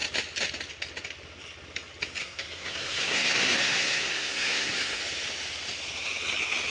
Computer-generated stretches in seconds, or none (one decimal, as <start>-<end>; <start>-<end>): 2.2-5.0